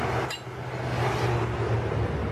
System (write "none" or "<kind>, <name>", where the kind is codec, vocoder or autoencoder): none